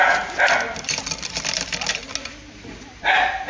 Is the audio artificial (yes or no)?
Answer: no